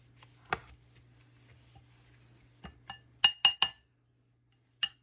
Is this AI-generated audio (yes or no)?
no